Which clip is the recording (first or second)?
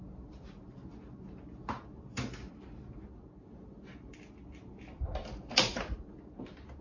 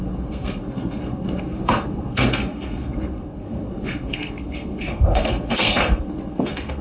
first